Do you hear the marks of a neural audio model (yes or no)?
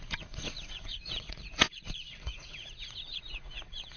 yes